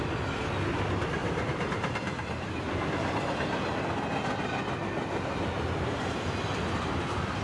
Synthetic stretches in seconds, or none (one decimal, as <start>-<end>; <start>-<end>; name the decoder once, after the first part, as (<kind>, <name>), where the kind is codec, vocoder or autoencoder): 1.2-2.6 (vocoder, BigVGAN v2)

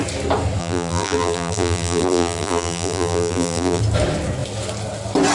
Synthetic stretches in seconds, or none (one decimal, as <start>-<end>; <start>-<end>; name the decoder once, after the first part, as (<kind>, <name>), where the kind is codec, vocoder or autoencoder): 0.6-3.8 (vocoder, BigVGAN v2)

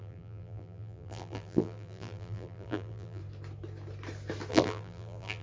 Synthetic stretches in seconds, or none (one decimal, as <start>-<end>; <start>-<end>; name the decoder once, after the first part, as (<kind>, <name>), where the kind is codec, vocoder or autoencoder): 0.0-3.2 (vocoder, BigVGAN v2); 4.5-5.4

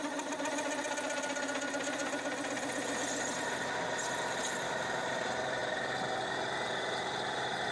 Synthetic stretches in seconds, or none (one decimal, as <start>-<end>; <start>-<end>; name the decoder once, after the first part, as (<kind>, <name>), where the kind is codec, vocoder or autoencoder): none